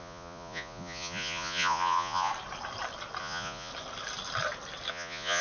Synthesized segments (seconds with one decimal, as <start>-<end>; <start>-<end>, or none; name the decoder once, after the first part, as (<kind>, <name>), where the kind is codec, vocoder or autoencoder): 0.0-2.3 (vocoder, Vocos); 3.2-3.7; 4.9-5.4